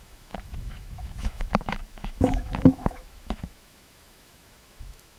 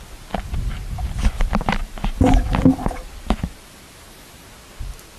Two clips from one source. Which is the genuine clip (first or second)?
second